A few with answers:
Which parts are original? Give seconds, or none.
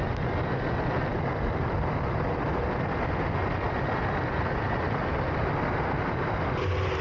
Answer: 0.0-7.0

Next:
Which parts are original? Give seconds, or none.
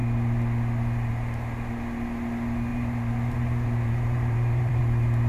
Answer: 0.0-2.7; 4.8-5.3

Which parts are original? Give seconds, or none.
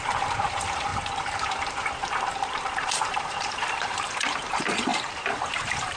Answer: none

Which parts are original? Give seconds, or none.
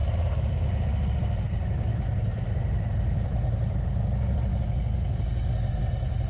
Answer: 0.7-2.3; 3.8-6.3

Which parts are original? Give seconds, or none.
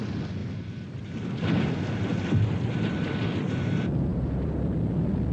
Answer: 0.0-0.4; 3.6-4.1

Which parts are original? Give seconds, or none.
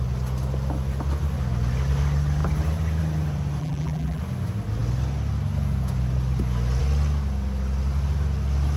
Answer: 0.0-3.6; 4.2-8.8